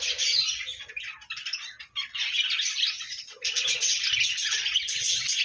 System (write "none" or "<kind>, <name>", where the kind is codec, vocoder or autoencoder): none